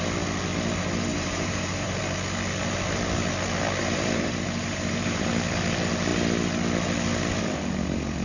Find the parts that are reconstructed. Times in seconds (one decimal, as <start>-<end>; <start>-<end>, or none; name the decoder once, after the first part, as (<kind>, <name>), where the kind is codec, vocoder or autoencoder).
1.1-2.0 (vocoder, BigVGAN v2); 3.8-5.3